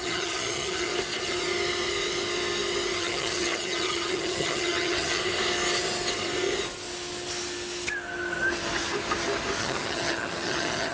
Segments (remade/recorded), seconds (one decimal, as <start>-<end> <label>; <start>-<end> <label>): 0.0-0.9 remade; 0.9-3.0 recorded; 3.0-5.2 remade; 5.2-9.6 recorded; 9.6-10.9 remade